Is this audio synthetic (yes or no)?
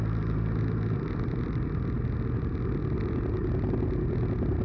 no